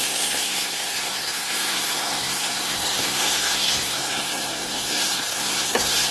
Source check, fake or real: fake